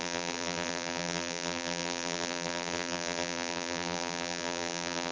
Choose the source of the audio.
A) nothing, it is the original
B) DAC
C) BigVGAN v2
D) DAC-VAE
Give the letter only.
C